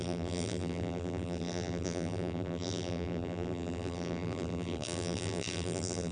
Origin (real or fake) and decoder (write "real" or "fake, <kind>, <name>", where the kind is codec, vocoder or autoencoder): fake, vocoder, BigVGAN v2